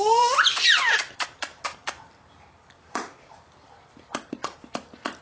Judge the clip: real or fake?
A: fake